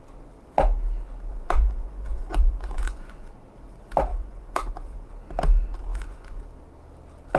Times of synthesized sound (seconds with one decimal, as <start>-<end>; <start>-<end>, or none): 1.3-3.3; 4.1-5.1; 5.9-6.4